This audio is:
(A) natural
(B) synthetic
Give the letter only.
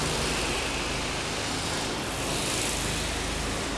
A